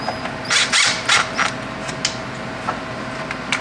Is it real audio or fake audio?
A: real